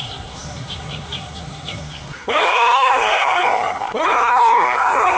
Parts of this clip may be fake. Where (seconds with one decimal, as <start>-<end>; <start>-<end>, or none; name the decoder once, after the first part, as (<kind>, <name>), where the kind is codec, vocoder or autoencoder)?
0.0-5.2 (codec, SNAC)